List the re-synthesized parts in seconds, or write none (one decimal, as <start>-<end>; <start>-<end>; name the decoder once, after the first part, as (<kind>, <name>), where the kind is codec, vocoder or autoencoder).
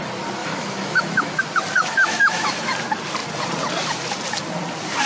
0.4-1.4 (autoencoder, DAC-VAE); 1.8-2.7